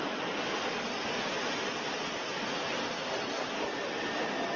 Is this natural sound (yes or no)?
yes